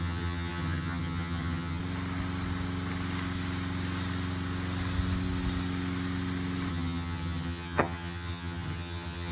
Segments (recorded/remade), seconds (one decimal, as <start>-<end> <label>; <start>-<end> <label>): 0.0-1.8 remade; 1.8-6.7 recorded; 6.7-9.3 remade